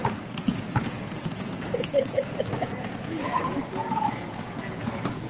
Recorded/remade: remade